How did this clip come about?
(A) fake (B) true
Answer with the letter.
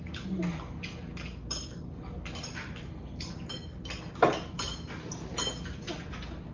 B